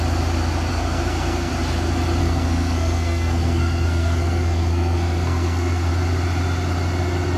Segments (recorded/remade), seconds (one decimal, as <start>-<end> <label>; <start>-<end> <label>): 0.0-0.7 recorded; 0.7-1.5 remade; 1.5-2.2 recorded; 2.2-5.9 remade; 5.9-7.4 recorded